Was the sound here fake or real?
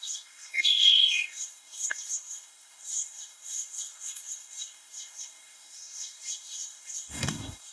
fake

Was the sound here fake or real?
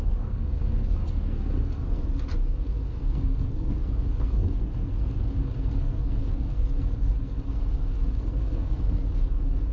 fake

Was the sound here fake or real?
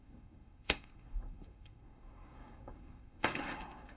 fake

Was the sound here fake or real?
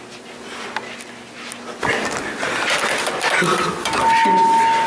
real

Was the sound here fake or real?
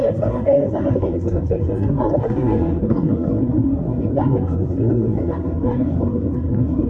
fake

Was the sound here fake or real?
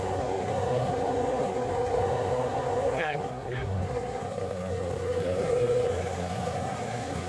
fake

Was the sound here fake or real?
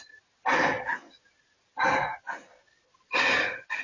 real